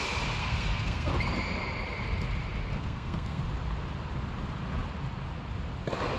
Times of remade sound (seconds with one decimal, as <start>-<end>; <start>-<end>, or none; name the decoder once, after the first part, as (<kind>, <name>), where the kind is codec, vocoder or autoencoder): 0.4-1.1 (codec, SNAC); 2.7-3.4